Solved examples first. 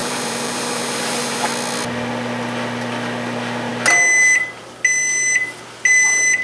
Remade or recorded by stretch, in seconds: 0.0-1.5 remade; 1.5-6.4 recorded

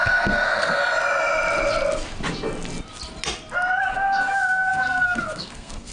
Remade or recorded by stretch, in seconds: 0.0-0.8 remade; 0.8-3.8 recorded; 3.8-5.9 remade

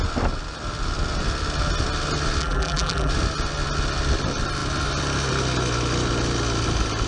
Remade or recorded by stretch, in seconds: 0.0-2.4 recorded; 2.4-3.1 remade; 3.1-7.1 recorded

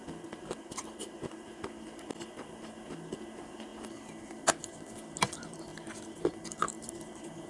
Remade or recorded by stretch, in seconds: 0.0-7.5 recorded

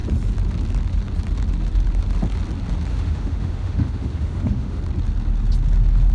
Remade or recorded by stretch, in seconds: 0.0-2.9 recorded; 2.9-4.8 remade; 4.8-6.1 recorded

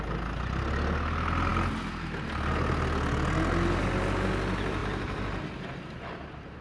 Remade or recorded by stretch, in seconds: 0.0-6.6 recorded

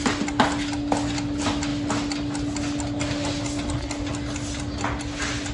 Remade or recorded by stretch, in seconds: 0.0-5.5 recorded